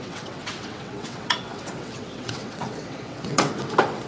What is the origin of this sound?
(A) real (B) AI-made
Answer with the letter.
B